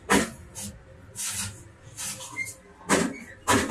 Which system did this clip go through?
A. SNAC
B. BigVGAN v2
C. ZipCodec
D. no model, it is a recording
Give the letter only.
D